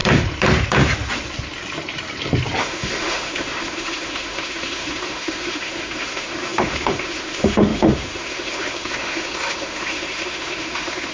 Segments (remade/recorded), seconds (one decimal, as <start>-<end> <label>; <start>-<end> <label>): 0.0-2.6 recorded; 2.6-11.1 remade